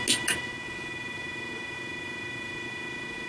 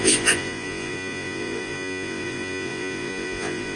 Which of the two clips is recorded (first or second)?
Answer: first